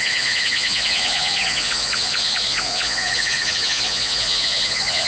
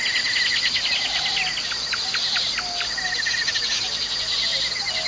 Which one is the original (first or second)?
second